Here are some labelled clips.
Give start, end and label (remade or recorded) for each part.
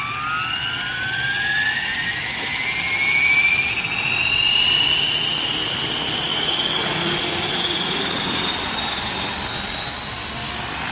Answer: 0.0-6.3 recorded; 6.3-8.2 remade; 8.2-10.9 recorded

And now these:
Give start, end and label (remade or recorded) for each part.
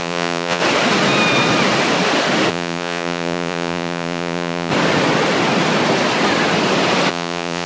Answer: 0.0-0.6 remade; 0.6-2.5 recorded; 2.5-4.7 remade; 4.7-7.1 recorded; 7.1-7.7 remade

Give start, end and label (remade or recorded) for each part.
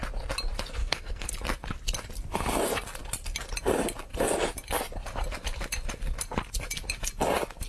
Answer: 0.0-0.8 recorded; 0.8-1.3 remade; 1.3-7.7 recorded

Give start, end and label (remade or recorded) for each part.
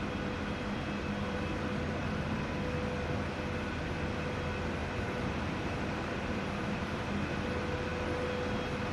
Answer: 0.0-2.0 recorded; 2.0-2.5 remade; 2.5-4.8 recorded; 4.8-7.0 remade; 7.0-8.9 recorded